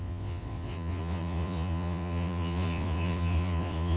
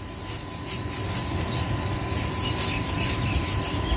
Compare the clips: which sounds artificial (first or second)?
first